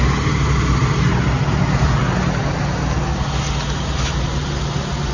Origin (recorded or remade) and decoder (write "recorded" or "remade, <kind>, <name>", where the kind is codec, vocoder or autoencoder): recorded